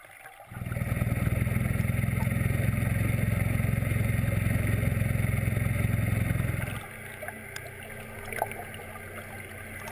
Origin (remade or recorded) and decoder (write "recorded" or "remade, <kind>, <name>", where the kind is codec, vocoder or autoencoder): recorded